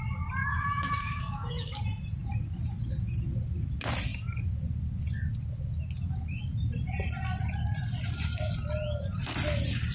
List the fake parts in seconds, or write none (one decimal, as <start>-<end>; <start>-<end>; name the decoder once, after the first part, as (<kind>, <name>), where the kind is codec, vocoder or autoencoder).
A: 0.4-1.8 (autoencoder, DAC-VAE)